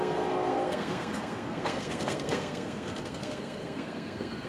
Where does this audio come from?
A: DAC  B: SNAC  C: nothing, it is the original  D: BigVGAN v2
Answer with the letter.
B